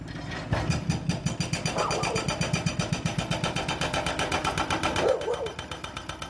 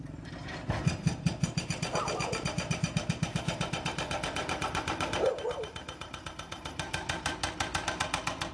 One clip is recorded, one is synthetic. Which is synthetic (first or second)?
second